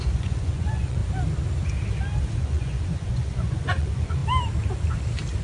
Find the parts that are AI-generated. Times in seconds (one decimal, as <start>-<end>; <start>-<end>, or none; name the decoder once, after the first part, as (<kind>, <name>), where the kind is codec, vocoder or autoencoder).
0.0-1.0 (vocoder, Vocos); 2.4-4.2